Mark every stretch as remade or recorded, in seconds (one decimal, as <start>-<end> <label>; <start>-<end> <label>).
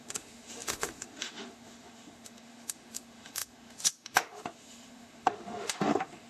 0.0-6.3 remade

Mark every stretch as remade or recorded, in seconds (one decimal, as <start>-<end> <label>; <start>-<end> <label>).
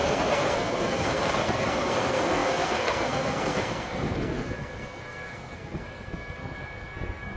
0.0-7.4 remade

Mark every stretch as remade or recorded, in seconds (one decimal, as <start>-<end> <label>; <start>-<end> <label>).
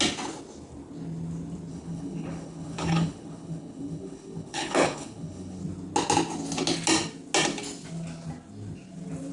0.0-1.7 recorded; 1.7-5.6 remade; 5.6-9.3 recorded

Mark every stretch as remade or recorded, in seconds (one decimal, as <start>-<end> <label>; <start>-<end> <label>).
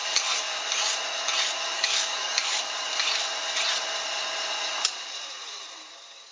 0.0-0.6 remade; 0.6-1.7 recorded; 1.7-2.7 remade; 2.7-6.3 recorded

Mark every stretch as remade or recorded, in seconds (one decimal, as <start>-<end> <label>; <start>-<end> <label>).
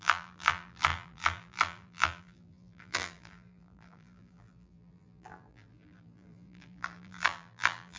0.0-8.0 remade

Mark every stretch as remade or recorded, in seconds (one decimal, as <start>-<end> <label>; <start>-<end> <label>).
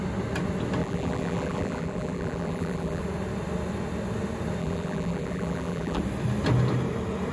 0.0-0.8 recorded; 0.8-3.0 remade; 3.0-4.6 recorded; 4.6-6.0 remade; 6.0-7.3 recorded